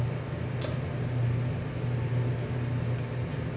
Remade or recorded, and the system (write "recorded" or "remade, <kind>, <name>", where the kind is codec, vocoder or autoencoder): recorded